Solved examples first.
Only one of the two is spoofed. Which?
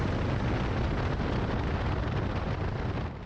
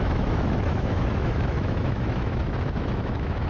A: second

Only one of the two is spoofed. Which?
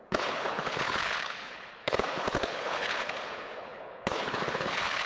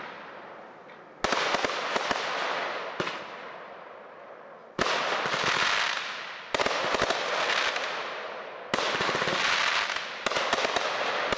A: first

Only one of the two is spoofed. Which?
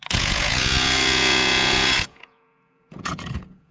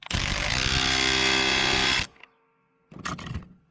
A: first